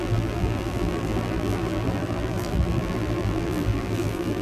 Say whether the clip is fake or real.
fake